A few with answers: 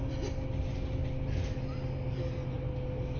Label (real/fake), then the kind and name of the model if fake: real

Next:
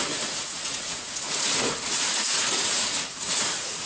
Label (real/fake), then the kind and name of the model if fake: fake, vocoder, Vocos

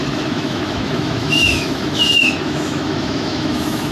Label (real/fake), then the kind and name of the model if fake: fake, autoencoder, DAC-VAE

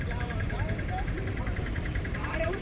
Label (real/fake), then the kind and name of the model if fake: fake, vocoder, BigVGAN v2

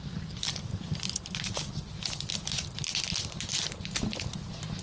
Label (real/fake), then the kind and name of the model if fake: real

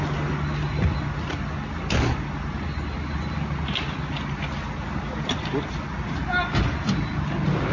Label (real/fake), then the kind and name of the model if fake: real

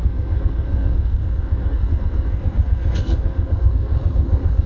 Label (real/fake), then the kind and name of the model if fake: fake, codec, SNAC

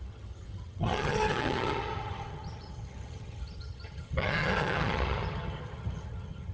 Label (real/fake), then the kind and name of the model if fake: fake, vocoder, HiFi-GAN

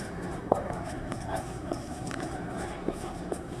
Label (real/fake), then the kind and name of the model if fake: fake, codec, SNAC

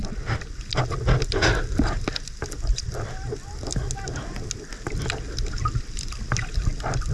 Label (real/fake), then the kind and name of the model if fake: real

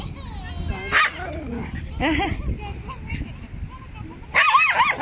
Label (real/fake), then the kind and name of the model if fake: real